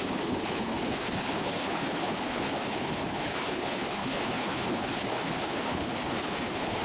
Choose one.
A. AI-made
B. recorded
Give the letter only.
A